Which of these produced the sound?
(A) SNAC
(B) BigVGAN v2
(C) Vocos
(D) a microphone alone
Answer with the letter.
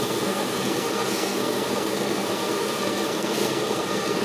A